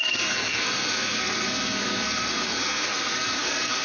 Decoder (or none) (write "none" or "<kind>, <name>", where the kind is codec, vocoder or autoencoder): codec, SNAC